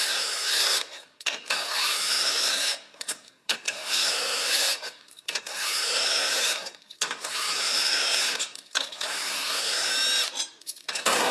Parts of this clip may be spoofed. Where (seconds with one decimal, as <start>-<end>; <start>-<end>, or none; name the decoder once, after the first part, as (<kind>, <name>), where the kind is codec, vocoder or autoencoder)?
0.0-9.9 (codec, SNAC); 10.6-11.3

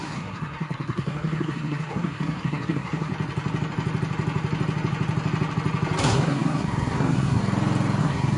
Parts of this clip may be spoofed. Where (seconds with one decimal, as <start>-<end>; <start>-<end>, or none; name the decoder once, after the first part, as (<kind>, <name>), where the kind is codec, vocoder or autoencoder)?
0.0-3.1 (codec, SNAC); 6.0-7.4; 8.0-8.4

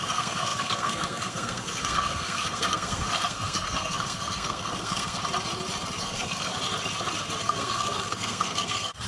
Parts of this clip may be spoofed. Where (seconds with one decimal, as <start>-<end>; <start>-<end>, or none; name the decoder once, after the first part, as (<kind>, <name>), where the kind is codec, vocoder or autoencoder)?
0.0-5.2 (codec, SNAC); 6.0-6.5; 7.4-9.1

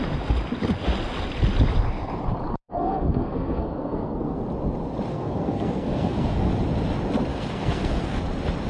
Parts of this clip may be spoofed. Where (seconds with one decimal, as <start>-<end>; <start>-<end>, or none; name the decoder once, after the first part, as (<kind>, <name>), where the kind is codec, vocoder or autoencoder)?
2.5-4.4 (codec, SNAC); 5.1-6.5; 7.3-8.2

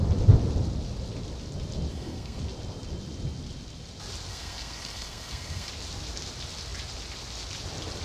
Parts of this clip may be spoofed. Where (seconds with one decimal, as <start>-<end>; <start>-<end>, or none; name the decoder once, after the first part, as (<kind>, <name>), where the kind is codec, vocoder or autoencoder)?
1.9-2.4 (codec, SNAC); 4.3-5.7

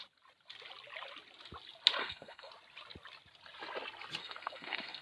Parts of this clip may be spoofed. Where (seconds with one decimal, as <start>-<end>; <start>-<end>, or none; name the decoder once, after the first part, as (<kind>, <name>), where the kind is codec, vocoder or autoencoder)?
2.0-2.5 (codec, SNAC); 4.2-5.0

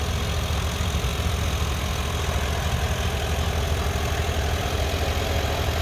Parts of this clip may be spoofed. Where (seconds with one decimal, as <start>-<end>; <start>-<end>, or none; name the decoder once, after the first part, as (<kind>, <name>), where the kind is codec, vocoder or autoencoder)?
none